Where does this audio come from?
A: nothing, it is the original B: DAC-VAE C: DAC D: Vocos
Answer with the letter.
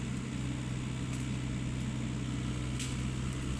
A